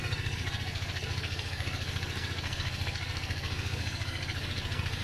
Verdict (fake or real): fake